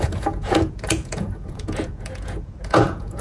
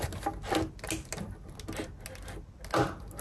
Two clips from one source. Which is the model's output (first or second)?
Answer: first